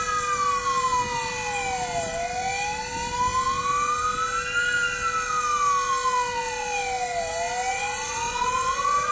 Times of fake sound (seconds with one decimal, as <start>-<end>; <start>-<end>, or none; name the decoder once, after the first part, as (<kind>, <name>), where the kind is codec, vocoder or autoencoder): 7.7-9.1 (vocoder, Vocos)